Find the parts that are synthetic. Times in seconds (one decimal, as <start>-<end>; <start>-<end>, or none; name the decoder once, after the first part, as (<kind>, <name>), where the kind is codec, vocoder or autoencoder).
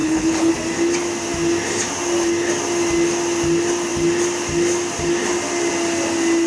0.0-0.5 (codec, HILCodec)